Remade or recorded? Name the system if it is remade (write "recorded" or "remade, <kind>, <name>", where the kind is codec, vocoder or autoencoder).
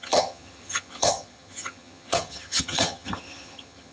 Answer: remade, vocoder, HiFi-GAN